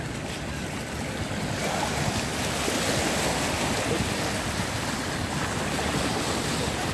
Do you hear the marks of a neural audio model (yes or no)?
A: no